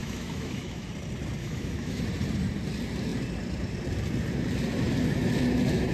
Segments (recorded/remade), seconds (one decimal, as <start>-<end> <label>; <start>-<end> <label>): 0.0-0.9 remade; 0.9-1.4 recorded; 1.4-2.0 remade; 2.0-5.9 recorded